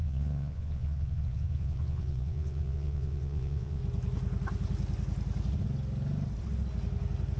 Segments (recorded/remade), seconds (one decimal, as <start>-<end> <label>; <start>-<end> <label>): 0.0-3.8 remade; 3.8-7.4 recorded